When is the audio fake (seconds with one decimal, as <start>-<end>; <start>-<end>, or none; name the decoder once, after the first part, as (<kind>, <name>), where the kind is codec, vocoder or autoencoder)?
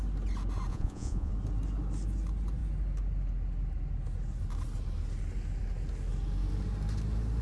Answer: 0.7-1.3 (vocoder, Vocos)